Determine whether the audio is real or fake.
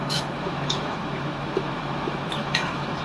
fake